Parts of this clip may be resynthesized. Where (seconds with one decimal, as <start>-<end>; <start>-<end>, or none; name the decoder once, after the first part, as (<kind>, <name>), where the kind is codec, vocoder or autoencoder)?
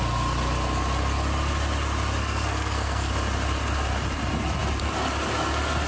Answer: 2.2-3.1 (codec, SNAC)